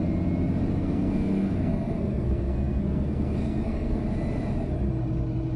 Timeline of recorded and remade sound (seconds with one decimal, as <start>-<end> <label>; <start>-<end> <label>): 0.0-0.7 recorded; 0.7-4.0 remade; 4.0-5.6 recorded